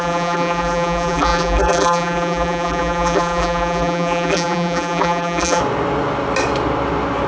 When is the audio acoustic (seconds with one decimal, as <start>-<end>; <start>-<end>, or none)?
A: 5.6-7.3